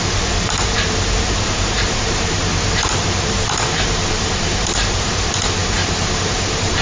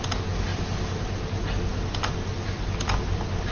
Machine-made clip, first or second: first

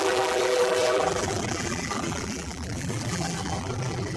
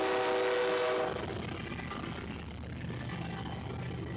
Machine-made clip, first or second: first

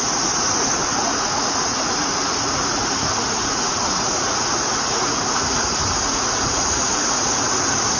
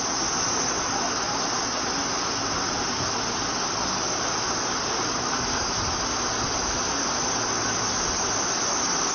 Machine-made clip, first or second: first